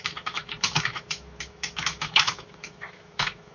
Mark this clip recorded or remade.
remade